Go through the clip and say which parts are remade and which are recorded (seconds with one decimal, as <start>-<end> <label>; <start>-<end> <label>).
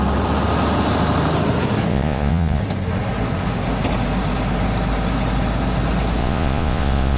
0.0-1.9 recorded; 1.9-2.6 remade; 2.6-6.2 recorded; 6.2-7.2 remade